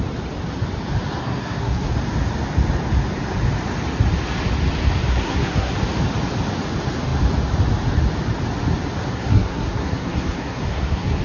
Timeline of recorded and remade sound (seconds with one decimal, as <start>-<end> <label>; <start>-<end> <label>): 0.0-1.2 recorded; 1.2-1.9 remade; 1.9-5.1 recorded; 5.1-5.7 remade; 5.7-9.1 recorded; 9.1-11.2 remade